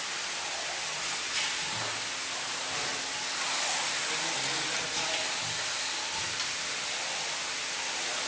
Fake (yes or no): no